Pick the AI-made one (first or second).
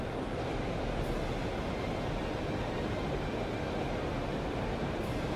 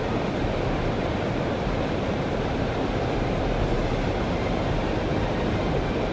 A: second